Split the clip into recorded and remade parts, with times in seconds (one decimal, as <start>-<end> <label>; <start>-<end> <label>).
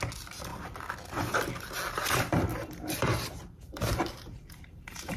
0.0-2.5 recorded; 2.5-5.2 remade